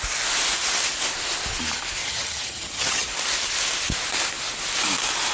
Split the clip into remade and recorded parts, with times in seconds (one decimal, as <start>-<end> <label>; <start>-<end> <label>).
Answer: 0.0-2.0 recorded; 2.0-3.1 remade; 3.1-5.3 recorded